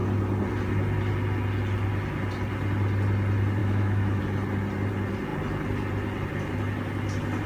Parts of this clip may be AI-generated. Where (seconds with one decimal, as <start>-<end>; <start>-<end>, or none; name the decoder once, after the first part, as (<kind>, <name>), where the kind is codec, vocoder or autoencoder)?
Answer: 3.6-4.2 (autoencoder, DAC-VAE)